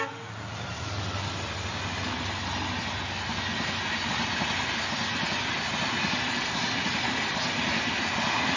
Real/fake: real